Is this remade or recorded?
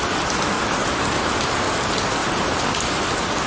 recorded